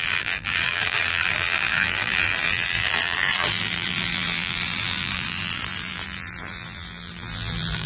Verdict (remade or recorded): remade